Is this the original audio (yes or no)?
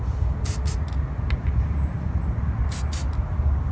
yes